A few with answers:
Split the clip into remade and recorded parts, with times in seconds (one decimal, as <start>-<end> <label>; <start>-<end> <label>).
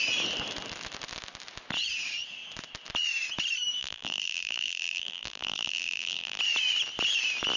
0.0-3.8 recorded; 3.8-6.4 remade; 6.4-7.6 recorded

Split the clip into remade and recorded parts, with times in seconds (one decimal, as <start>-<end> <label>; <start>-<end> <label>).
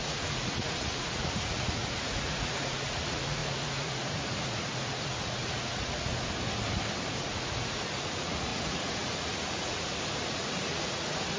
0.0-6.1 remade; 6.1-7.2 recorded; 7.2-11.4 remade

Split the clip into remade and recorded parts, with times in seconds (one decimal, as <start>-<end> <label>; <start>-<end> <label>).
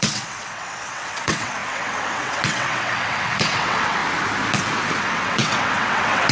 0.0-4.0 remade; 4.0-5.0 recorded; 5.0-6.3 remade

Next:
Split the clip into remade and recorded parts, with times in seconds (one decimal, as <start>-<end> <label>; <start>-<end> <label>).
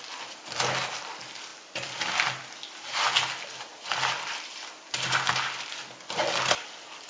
0.0-7.1 recorded